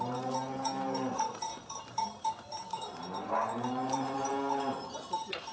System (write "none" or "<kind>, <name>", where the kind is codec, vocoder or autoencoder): vocoder, BigVGAN v2